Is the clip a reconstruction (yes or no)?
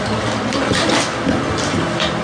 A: no